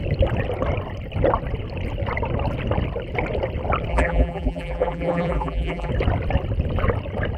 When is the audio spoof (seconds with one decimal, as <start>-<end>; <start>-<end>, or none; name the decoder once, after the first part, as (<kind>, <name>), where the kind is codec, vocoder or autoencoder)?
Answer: 3.9-5.9 (vocoder, BigVGAN v2)